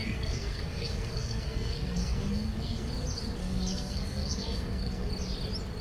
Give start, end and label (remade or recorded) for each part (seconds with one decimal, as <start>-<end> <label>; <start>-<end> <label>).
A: 0.0-2.9 remade; 2.9-3.4 recorded; 3.4-5.1 remade; 5.1-5.8 recorded

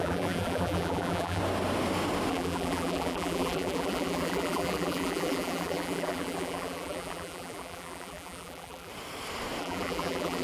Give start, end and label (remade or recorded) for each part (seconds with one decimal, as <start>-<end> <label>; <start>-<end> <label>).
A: 0.0-1.4 remade; 1.4-2.3 recorded; 2.3-8.9 remade; 8.9-9.6 recorded; 9.6-10.4 remade

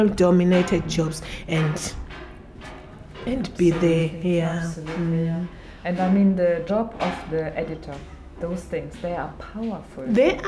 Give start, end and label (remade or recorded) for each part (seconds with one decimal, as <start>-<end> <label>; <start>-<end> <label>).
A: 0.0-4.0 recorded; 4.0-6.7 remade; 6.7-8.0 recorded; 8.0-8.6 remade; 8.6-10.5 recorded